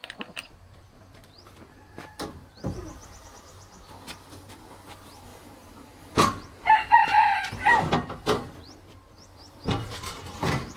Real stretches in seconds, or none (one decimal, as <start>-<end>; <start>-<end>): 3.8-5.3; 6.5-10.8